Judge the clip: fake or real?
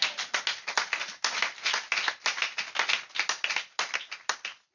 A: real